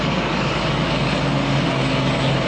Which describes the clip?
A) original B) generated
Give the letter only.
B